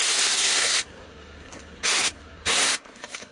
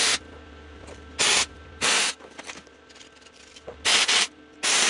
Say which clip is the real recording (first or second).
second